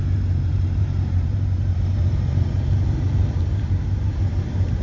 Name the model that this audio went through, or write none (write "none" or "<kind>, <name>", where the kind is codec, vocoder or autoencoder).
vocoder, BigVGAN v2